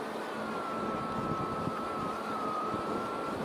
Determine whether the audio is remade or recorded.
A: recorded